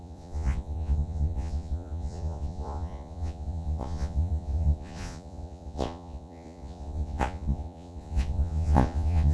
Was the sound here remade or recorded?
remade